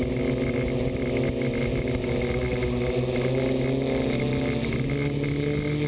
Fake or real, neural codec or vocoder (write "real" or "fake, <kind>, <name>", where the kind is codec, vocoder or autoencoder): real